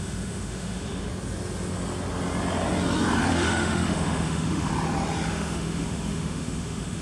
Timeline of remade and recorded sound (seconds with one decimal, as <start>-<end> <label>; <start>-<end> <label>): 0.0-1.1 remade; 1.1-3.3 recorded; 3.3-4.7 remade; 4.7-5.3 recorded; 5.3-7.0 remade